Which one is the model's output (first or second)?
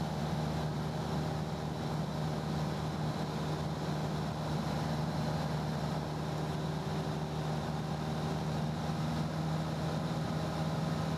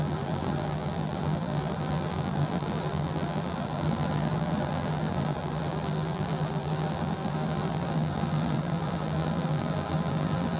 second